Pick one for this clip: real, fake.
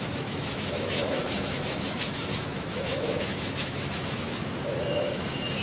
fake